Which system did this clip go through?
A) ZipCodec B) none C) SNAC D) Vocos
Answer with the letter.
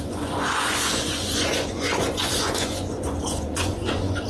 D